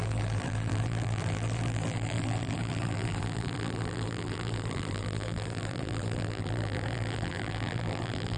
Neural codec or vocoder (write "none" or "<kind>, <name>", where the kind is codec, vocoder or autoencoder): vocoder, BigVGAN v2